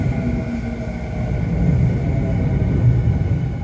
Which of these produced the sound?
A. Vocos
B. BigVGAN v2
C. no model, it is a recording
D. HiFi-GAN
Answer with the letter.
C